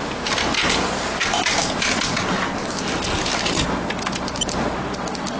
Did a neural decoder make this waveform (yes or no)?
no